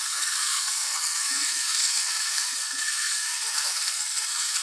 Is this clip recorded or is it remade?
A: remade